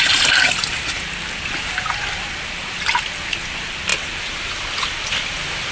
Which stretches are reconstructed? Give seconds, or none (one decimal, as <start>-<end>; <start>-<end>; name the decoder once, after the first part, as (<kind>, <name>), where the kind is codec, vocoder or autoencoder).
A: none